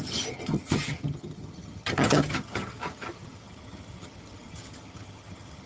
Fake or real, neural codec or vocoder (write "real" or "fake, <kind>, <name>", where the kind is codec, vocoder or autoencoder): fake, vocoder, HiFi-GAN